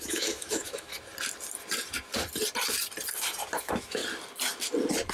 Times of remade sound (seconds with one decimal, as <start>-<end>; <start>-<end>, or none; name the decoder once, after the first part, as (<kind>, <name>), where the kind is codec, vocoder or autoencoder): 0.0-0.9 (autoencoder, DAC-VAE); 3.6-4.0